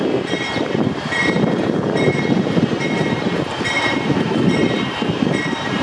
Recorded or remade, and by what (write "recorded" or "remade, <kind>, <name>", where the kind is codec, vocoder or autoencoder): remade, vocoder, BigVGAN v2